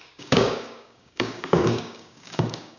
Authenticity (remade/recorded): remade